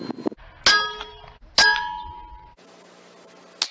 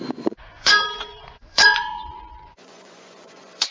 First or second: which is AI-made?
second